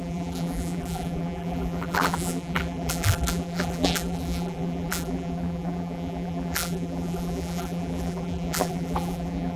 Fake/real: fake